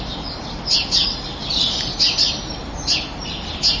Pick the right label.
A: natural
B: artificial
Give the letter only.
A